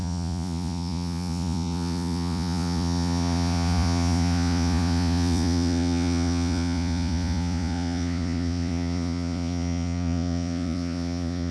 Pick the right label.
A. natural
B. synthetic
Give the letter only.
B